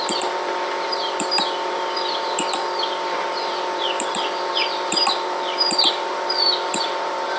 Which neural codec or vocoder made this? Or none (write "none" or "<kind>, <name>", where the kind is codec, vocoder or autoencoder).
vocoder, BigVGAN v2